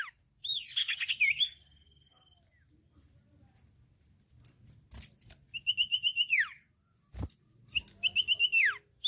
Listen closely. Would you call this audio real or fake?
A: real